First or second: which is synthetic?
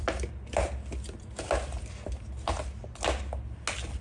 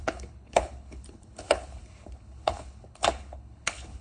second